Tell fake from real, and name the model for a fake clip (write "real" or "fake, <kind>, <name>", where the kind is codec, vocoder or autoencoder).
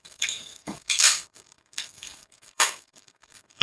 fake, codec, SNAC